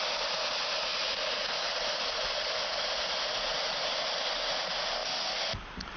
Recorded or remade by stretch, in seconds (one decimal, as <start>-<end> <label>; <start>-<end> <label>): 0.0-6.0 recorded